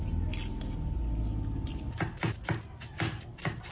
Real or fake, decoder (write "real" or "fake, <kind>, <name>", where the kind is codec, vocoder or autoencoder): real